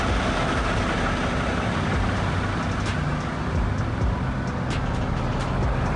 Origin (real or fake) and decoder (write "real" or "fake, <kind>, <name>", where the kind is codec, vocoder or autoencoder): real